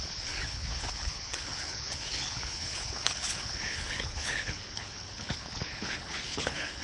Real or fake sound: fake